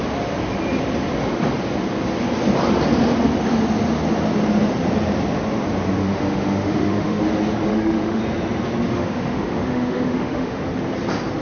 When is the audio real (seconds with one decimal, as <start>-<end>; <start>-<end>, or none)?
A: 0.0-6.0; 7.2-7.7; 8.2-8.9; 10.6-11.4